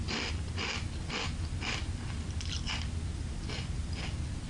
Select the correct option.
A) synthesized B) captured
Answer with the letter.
B